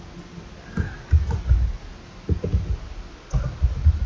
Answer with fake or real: real